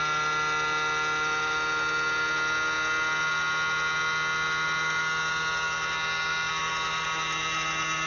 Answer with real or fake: real